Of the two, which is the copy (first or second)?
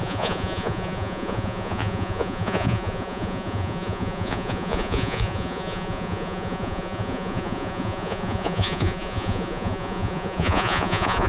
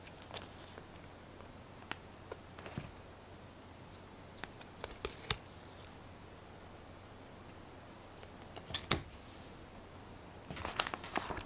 first